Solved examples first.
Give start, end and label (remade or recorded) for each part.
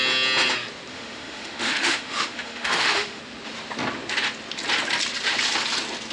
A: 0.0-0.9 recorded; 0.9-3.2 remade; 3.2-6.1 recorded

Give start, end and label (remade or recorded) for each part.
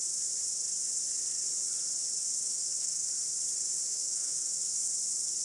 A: 0.0-2.2 recorded; 2.2-3.1 remade; 3.1-3.9 recorded; 3.9-4.8 remade; 4.8-5.4 recorded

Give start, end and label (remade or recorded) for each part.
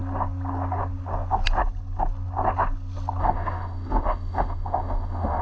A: 0.0-3.2 recorded; 3.2-5.4 remade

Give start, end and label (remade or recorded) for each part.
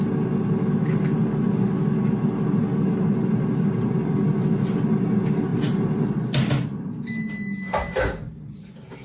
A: 0.0-9.0 recorded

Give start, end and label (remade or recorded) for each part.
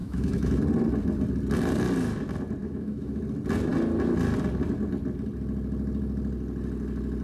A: 0.0-0.6 remade; 0.6-2.6 recorded; 2.6-3.2 remade; 3.2-7.2 recorded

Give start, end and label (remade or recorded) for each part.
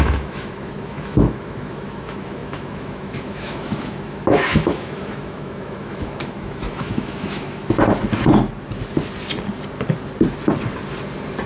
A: 0.0-7.6 remade; 7.6-11.5 recorded